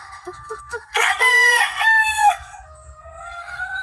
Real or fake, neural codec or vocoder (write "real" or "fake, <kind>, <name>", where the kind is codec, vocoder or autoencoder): fake, codec, SNAC